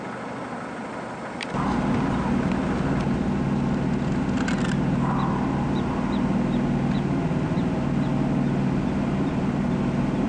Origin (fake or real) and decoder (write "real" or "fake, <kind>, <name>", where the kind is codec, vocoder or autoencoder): real